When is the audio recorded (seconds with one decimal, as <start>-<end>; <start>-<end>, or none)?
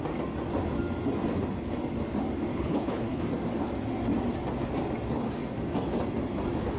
0.0-2.5; 3.2-6.8